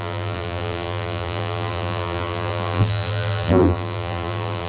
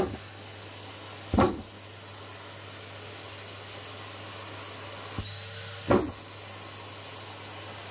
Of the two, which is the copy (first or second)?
first